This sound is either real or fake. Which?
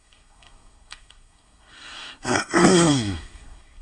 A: fake